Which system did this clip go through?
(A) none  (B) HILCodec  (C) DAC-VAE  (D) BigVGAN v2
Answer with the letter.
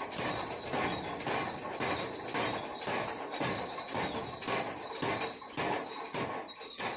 A